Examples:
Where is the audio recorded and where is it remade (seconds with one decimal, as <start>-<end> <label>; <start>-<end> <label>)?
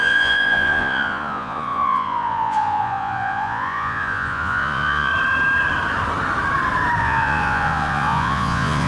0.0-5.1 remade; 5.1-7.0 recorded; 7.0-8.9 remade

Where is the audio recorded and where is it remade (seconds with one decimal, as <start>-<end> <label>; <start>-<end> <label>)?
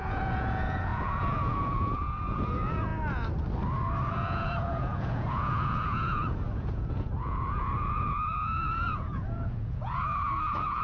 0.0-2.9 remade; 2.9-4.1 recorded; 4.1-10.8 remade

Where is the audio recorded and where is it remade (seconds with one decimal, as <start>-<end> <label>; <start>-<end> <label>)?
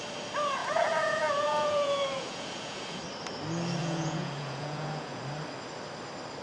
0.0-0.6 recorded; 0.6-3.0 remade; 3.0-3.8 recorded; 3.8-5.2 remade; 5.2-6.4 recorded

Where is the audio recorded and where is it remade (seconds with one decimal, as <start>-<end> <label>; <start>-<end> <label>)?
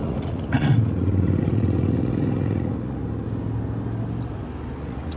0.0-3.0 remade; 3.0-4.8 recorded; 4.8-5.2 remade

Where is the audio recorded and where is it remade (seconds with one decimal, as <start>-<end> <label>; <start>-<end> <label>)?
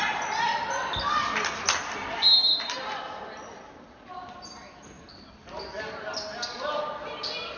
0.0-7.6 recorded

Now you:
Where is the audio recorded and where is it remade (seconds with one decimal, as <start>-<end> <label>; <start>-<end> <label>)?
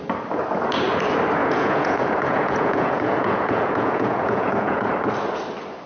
0.0-1.4 recorded; 1.4-4.9 remade; 4.9-5.9 recorded